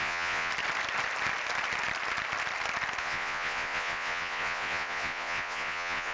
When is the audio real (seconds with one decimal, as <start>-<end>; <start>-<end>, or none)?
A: 0.5-3.0